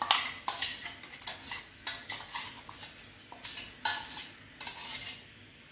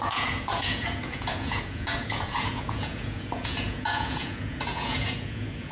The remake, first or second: second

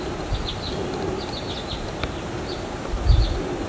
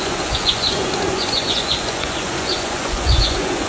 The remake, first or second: second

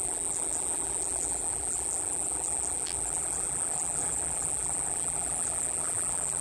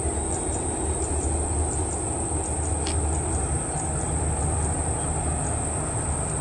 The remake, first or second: first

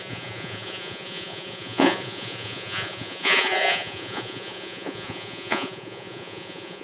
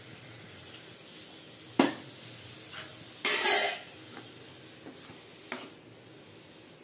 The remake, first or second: first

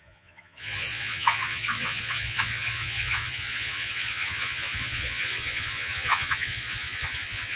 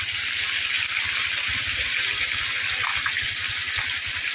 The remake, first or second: first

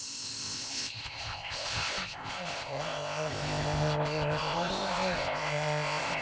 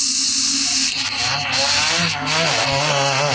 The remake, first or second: first